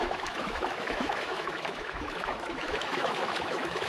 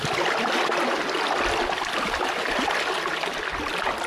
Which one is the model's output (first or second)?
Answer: first